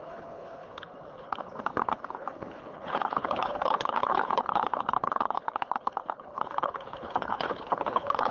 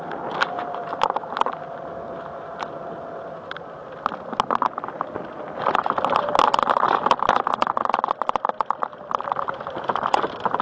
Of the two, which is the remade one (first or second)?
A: first